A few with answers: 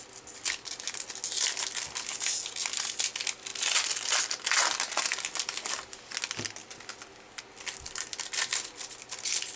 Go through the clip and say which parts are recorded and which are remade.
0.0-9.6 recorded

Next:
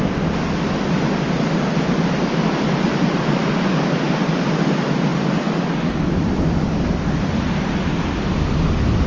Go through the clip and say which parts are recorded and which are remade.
0.0-9.1 recorded

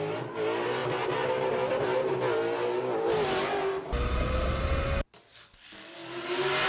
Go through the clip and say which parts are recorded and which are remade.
0.0-6.7 recorded

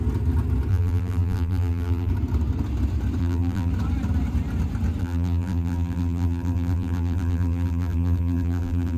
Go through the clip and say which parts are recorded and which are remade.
0.0-0.7 recorded; 0.7-2.1 remade; 2.1-3.2 recorded; 3.2-3.7 remade; 3.7-5.0 recorded; 5.0-9.0 remade

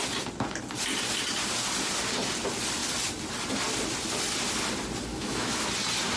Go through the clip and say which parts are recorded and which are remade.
0.0-5.1 recorded; 5.1-5.7 remade; 5.7-6.2 recorded